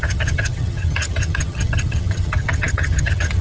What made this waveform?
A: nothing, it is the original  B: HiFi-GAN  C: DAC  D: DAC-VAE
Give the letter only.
B